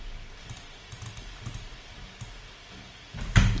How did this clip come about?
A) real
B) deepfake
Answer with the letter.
A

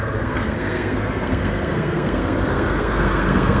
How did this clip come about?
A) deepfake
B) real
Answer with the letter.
A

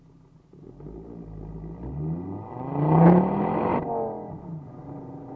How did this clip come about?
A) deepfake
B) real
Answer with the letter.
B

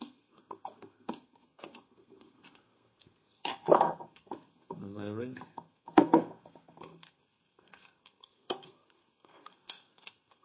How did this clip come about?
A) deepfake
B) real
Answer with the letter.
A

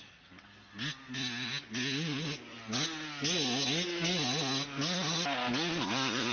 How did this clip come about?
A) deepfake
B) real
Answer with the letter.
B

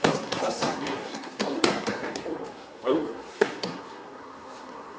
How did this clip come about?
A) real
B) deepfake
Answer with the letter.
B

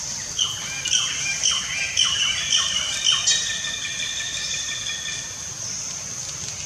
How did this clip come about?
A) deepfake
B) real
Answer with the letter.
B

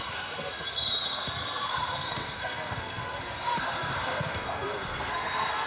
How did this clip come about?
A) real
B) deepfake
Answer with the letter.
B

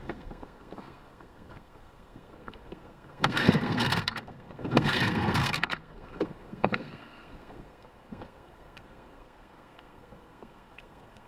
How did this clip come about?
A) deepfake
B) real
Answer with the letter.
A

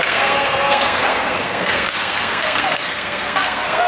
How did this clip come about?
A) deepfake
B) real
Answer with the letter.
A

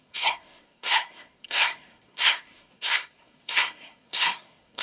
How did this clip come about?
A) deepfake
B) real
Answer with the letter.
A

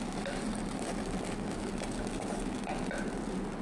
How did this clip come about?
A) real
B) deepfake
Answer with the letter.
A